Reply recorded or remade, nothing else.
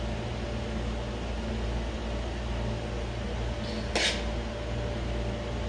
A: recorded